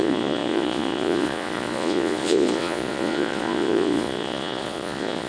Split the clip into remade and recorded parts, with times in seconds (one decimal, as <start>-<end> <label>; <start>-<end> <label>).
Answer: 0.0-5.3 remade